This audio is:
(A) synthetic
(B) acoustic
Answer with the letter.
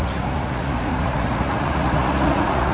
A